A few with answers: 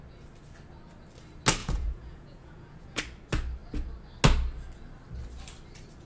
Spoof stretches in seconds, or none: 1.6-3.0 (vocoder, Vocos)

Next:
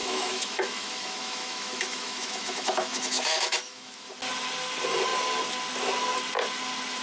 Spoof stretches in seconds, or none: 0.0-4.1 (autoencoder, DAC-VAE)

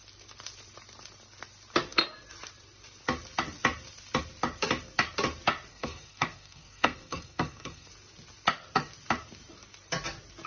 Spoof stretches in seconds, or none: 5.7-7.9 (codec, SNAC)

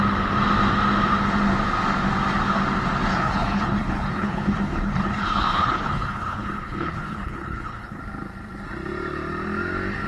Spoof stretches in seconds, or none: 3.1-8.0 (codec, HILCodec)